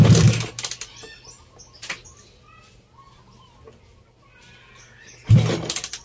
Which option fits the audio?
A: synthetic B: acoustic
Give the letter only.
B